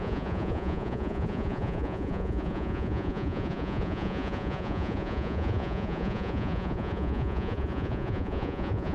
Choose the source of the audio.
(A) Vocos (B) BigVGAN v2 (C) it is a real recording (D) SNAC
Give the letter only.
A